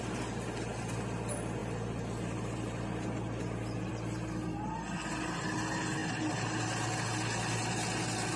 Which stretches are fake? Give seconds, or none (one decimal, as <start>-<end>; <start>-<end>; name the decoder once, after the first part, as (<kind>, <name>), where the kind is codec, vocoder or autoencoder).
none